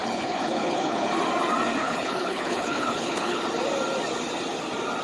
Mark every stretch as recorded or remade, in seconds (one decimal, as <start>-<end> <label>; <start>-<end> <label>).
0.0-1.1 remade; 1.1-1.8 recorded; 1.8-3.4 remade; 3.4-5.0 recorded